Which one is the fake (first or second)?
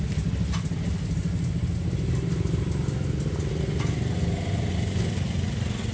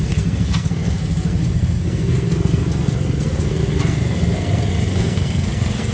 second